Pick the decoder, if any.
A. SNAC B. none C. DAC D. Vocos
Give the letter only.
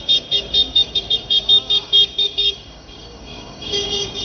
C